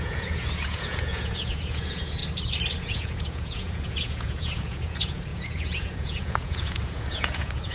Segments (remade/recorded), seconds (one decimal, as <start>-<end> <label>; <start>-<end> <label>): 0.0-2.2 remade; 2.2-2.8 recorded; 2.8-7.7 remade